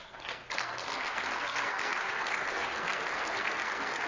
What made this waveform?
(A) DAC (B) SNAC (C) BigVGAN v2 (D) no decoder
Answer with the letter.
B